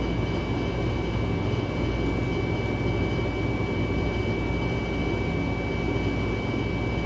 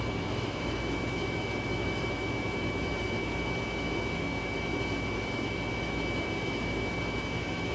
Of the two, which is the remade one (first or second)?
second